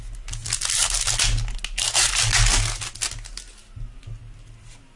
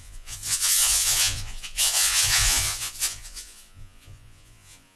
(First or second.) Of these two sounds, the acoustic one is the first